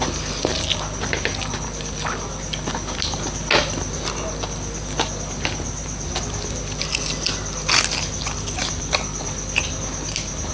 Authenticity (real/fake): real